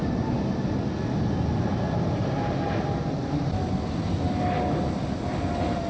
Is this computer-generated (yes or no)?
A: no